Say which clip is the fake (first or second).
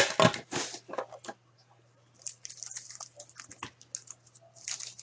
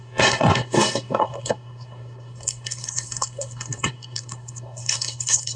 second